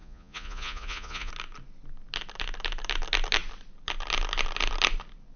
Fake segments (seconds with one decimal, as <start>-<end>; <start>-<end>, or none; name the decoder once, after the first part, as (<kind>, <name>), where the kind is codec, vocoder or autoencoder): 0.0-1.3 (vocoder, Vocos)